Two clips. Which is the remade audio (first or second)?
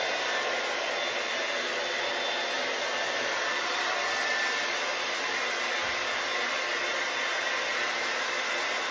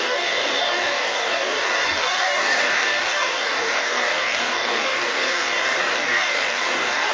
second